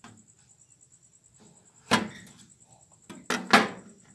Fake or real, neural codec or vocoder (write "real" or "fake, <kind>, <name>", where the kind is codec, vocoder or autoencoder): real